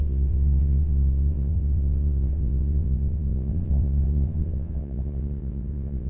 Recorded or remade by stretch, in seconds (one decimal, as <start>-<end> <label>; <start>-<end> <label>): 0.0-6.1 remade